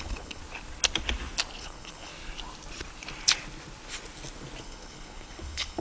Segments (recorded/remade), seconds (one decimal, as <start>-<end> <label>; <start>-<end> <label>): 0.0-0.4 remade; 0.4-1.6 recorded; 1.6-2.1 remade; 2.1-4.6 recorded; 4.6-5.8 remade